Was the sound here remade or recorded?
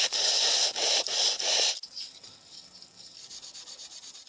recorded